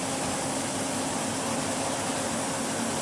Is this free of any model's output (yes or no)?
yes